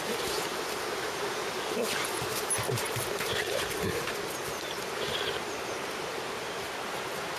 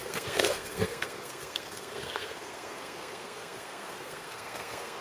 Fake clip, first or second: second